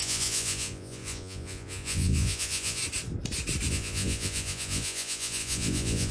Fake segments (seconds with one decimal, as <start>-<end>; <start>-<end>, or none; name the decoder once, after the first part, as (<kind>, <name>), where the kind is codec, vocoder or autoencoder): 0.0-2.8 (vocoder, Vocos); 3.7-6.1